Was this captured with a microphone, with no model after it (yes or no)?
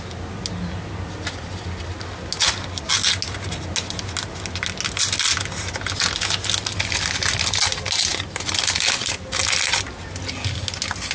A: yes